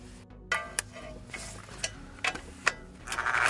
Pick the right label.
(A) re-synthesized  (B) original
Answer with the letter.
B